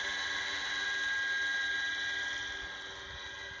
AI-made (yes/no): no